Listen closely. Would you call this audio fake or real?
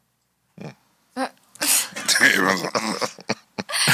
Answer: real